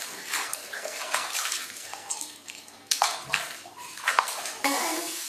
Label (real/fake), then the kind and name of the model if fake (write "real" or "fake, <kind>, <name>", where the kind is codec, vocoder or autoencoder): fake, codec, SNAC